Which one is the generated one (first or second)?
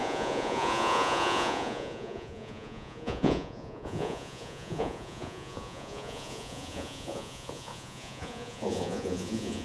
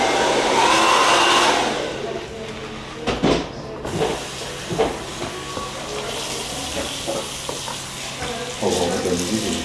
first